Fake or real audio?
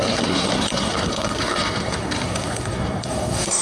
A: fake